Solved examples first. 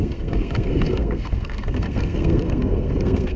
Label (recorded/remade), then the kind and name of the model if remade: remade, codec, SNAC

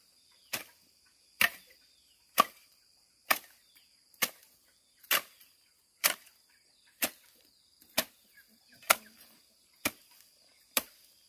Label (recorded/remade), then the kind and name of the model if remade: remade, vocoder, BigVGAN v2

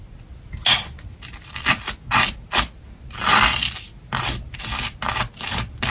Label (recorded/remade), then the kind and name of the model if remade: recorded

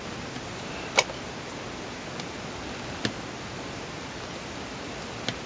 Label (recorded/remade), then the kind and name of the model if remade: recorded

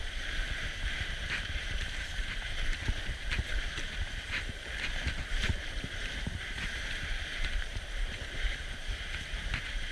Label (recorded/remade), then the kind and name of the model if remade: remade, vocoder, BigVGAN v2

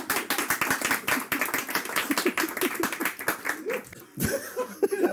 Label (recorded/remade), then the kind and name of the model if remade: recorded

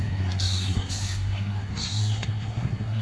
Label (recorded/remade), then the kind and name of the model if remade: remade, codec, SNAC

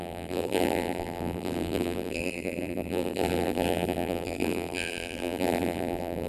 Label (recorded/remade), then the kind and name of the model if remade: remade, vocoder, BigVGAN v2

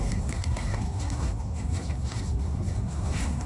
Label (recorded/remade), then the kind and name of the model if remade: remade, codec, SNAC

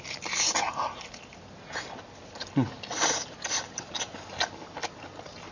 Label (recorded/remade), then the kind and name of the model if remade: recorded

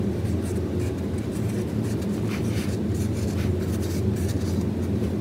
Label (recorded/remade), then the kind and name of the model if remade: recorded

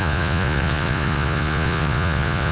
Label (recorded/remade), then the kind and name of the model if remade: remade, vocoder, Vocos